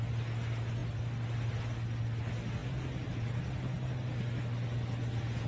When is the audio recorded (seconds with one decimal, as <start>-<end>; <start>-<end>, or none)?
0.0-5.5